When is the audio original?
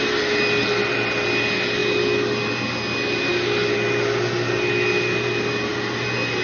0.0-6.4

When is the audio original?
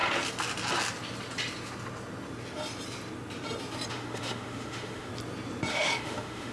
0.0-3.9; 5.1-5.7